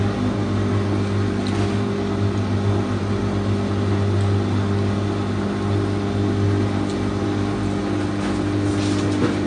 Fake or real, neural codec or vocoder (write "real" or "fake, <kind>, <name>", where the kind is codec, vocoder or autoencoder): real